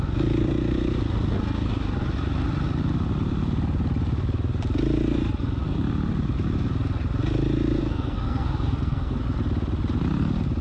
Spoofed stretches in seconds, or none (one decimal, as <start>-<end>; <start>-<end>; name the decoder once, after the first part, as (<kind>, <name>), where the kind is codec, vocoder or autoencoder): 7.8-9.2 (codec, SNAC)